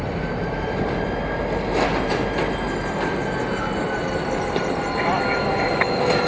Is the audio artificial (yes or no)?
no